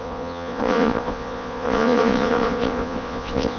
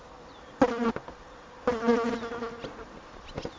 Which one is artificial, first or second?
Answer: first